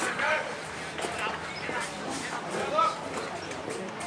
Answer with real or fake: fake